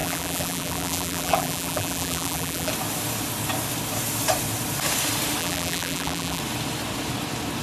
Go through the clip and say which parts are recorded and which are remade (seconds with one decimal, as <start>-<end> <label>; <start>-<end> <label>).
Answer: 0.0-2.7 remade; 2.7-5.4 recorded; 5.4-6.4 remade; 6.4-7.6 recorded